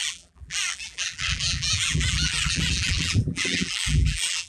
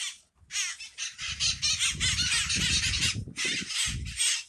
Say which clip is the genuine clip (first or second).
second